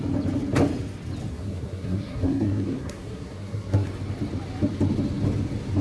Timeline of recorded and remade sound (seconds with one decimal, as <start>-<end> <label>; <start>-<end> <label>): 0.0-1.3 recorded; 1.3-3.9 remade; 3.9-5.8 recorded